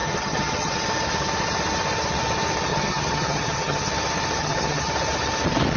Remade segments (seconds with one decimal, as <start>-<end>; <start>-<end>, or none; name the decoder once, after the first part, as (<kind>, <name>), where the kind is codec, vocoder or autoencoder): 0.0-0.7 (vocoder, HiFi-GAN); 2.7-3.9; 4.4-4.9